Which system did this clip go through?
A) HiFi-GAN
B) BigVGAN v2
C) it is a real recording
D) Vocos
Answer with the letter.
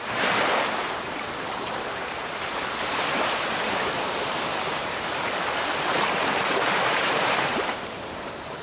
B